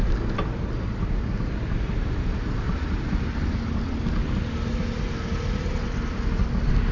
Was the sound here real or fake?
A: real